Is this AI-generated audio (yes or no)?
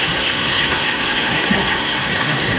yes